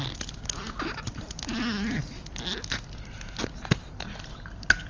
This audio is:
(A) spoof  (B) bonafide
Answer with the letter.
B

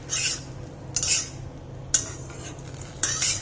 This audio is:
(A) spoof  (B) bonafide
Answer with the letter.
B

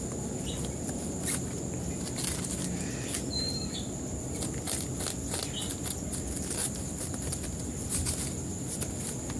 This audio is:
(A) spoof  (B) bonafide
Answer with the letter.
B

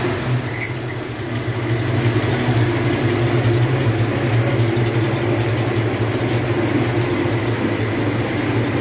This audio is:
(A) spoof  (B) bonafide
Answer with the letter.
B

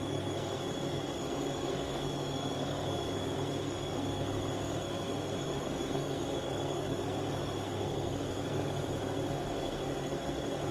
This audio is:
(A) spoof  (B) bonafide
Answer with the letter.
A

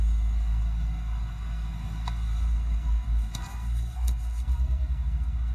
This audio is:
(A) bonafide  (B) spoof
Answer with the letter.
B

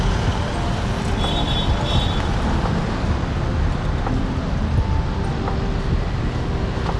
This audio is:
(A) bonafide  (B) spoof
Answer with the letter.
A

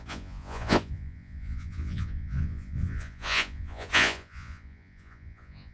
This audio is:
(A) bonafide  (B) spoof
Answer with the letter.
B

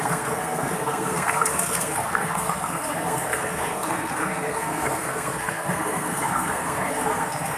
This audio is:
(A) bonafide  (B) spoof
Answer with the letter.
B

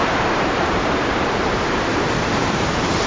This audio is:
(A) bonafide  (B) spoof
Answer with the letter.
B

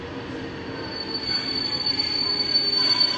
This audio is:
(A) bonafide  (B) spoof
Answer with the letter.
A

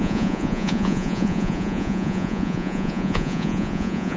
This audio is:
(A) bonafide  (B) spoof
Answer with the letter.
B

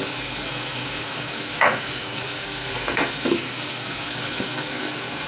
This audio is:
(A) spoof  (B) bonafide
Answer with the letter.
A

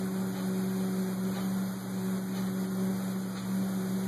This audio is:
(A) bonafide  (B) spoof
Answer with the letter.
A